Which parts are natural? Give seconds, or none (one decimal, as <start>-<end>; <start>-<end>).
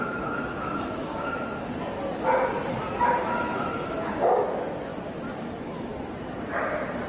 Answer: 1.1-3.2; 4.9-7.1